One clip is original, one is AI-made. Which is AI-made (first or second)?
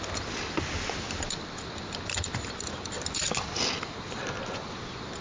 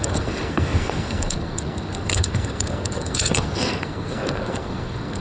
second